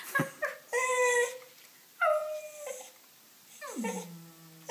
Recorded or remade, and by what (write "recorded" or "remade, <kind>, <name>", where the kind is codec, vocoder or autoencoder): recorded